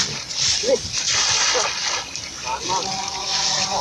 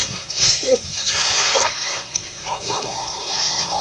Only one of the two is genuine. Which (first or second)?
first